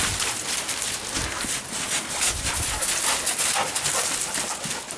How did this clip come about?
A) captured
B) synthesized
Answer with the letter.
A